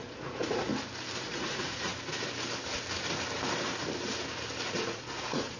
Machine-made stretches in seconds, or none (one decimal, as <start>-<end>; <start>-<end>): 0.0-0.7; 1.2-1.9; 4.7-5.6